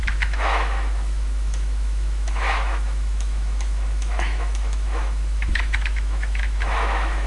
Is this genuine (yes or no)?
no